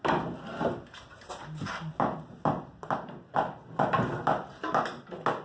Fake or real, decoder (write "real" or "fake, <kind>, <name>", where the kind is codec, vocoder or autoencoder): real